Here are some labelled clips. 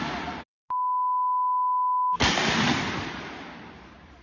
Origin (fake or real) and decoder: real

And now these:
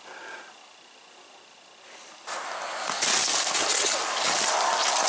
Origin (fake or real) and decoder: real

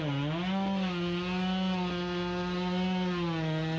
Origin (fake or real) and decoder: real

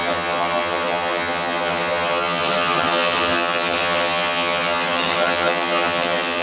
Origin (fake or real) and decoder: fake, vocoder, HiFi-GAN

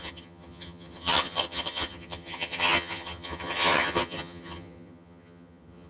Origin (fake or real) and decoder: fake, vocoder, HiFi-GAN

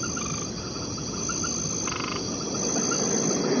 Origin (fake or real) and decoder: real